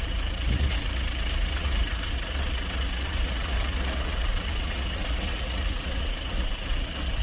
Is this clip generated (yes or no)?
yes